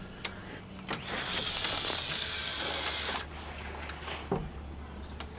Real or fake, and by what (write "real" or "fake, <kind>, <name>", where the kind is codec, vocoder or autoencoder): real